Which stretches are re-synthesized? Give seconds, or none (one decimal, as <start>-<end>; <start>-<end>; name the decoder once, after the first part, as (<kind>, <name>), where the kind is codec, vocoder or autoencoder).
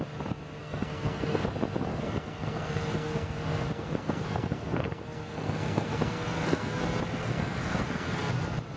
0.6-1.5 (codec, SNAC); 1.9-6.8; 7.2-8.3